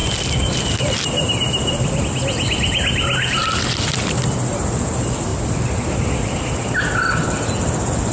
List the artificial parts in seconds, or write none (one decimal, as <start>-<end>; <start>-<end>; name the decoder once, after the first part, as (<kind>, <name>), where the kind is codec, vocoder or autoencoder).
none